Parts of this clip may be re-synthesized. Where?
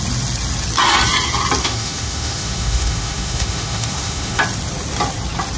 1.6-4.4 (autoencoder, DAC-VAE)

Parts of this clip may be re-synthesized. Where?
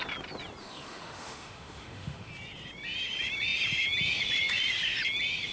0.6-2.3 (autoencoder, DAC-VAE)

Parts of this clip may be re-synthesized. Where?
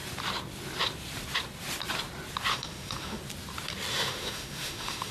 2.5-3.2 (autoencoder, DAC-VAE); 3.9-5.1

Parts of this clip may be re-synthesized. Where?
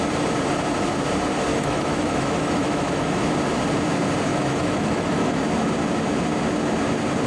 1.5-3.2 (autoencoder, DAC-VAE); 4.3-5.4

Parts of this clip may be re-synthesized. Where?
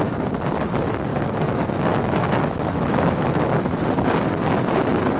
1.1-3.8 (autoencoder, DAC-VAE)